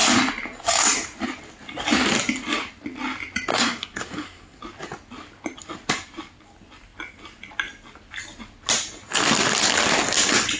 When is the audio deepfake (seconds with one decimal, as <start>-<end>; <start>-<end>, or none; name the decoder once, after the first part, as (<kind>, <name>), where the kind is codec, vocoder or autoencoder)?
3.5-4.6 (codec, SNAC)